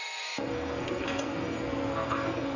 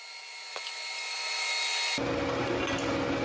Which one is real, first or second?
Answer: second